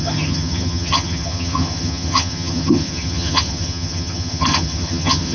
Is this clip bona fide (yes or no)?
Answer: no